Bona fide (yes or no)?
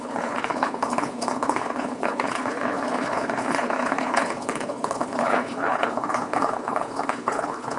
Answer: no